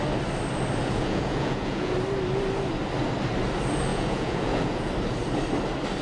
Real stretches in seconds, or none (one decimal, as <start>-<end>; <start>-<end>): 0.0-0.8; 1.9-3.9; 4.9-6.0